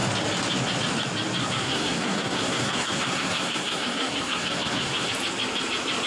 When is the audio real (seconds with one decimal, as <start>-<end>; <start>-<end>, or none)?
0.0-1.4; 5.1-6.1